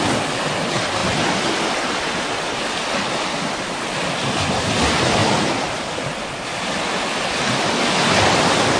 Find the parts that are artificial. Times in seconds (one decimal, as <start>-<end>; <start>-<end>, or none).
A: none